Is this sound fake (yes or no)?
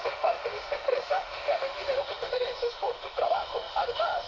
yes